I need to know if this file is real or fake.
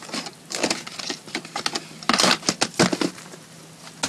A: real